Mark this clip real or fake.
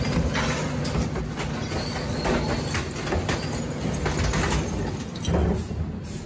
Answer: real